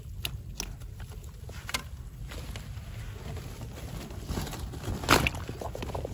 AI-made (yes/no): no